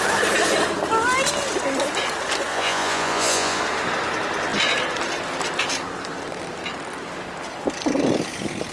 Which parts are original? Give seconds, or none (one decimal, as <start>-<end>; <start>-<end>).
0.0-2.5; 3.6-8.7